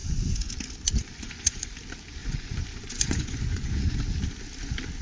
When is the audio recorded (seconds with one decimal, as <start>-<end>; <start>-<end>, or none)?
0.5-1.0; 1.7-2.2; 4.0-5.0